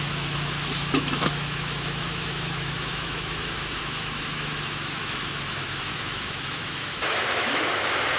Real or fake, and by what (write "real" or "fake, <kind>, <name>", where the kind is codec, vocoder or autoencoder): fake, autoencoder, DAC-VAE